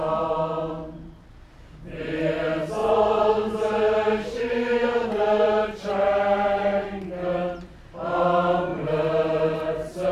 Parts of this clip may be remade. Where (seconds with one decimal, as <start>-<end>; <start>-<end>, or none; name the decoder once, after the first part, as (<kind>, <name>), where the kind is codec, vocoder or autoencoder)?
1.5-2.0 (vocoder, BigVGAN v2); 2.8-7.0; 8.7-10.1